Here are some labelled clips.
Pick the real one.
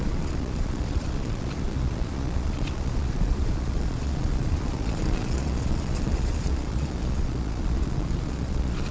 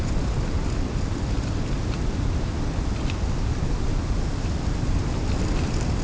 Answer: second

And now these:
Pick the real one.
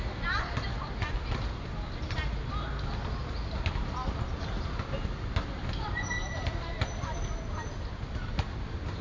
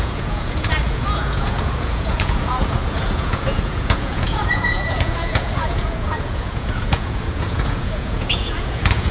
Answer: first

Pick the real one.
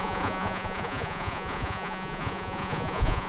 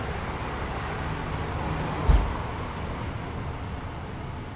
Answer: second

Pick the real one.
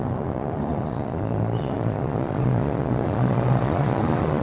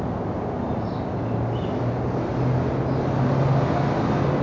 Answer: second